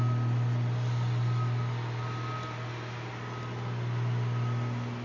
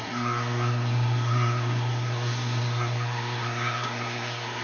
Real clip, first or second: first